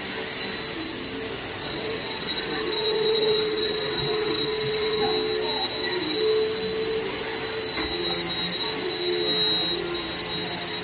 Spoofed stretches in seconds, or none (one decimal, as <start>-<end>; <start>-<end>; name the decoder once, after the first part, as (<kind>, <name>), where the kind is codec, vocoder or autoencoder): 1.6-5.0 (vocoder, WaveNeXt)